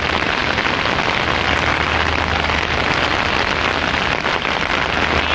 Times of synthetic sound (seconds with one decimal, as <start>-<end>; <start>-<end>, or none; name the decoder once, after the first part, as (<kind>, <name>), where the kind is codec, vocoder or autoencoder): none